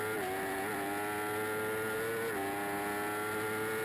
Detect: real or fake real